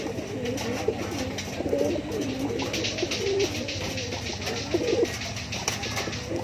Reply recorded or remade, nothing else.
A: recorded